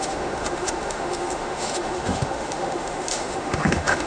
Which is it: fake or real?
fake